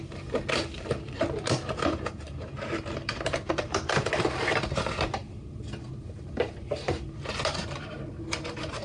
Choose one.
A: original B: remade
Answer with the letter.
B